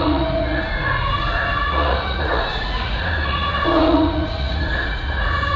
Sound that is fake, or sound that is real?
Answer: fake